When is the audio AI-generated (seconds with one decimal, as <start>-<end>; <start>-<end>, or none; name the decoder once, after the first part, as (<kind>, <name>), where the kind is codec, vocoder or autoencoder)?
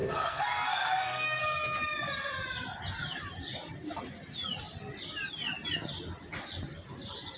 0.0-1.4 (codec, SNAC)